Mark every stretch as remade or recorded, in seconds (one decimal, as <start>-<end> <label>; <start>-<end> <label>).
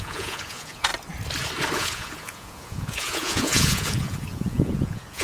0.0-0.9 remade; 0.9-1.8 recorded; 1.8-5.2 remade